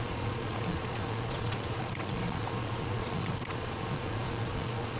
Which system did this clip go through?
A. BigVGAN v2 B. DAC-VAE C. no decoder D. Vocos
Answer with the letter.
D